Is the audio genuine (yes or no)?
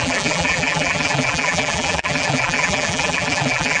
no